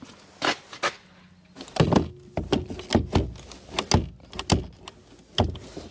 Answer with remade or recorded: recorded